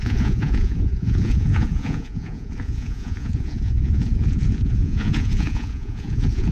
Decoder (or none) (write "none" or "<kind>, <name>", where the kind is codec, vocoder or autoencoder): vocoder, Vocos